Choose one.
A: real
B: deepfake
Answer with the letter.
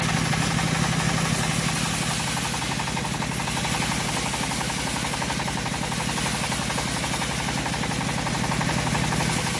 A